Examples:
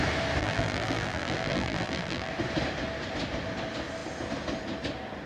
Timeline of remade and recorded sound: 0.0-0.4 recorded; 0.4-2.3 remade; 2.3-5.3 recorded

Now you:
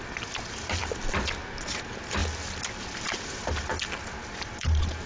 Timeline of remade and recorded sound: 0.0-0.8 remade; 0.8-1.6 recorded; 1.6-2.2 remade; 2.2-2.8 recorded; 2.8-3.7 remade; 3.7-4.3 recorded; 4.3-5.1 remade

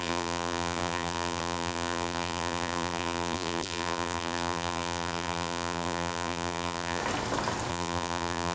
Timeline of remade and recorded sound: 0.0-7.0 remade; 7.0-7.7 recorded; 7.7-8.5 remade

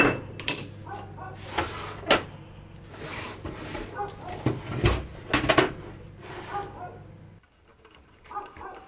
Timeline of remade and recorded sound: 0.0-7.7 recorded; 7.7-8.9 remade